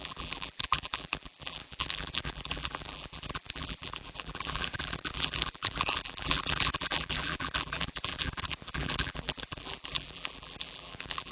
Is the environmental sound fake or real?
fake